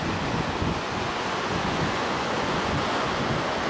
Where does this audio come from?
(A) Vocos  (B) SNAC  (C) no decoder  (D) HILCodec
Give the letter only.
A